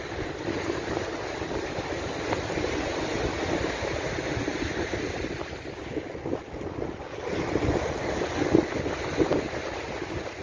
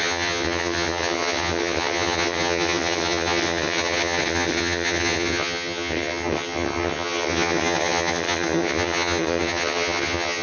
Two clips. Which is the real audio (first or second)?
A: first